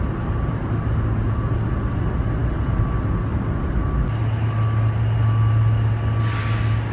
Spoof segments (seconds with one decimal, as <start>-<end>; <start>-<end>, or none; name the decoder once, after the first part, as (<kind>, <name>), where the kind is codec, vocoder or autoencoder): none